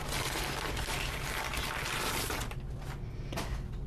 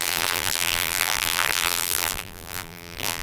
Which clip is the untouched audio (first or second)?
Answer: first